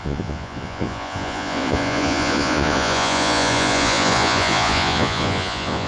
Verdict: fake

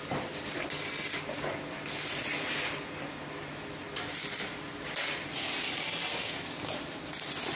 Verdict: real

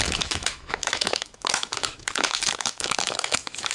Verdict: fake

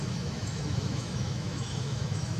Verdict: fake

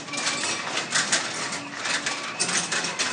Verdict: real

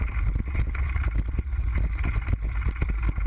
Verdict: real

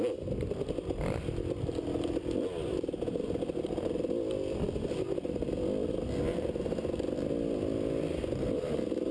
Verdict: real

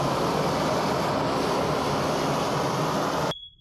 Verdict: real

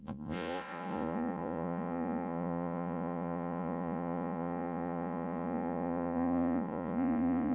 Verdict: fake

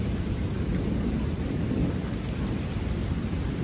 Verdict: fake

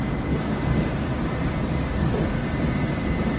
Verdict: fake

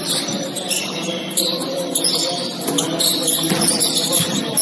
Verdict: real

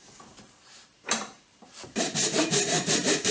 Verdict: fake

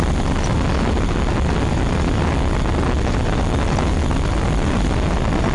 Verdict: real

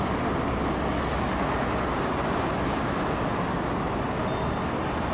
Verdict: real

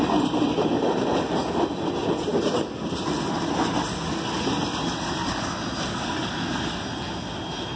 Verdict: real